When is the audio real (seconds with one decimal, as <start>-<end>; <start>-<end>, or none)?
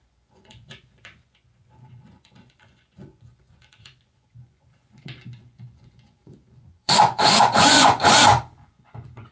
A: none